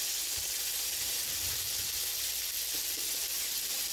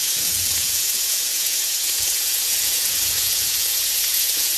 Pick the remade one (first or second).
second